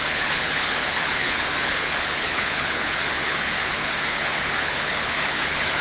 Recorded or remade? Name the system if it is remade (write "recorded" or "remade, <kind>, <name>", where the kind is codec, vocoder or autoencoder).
remade, codec, HILCodec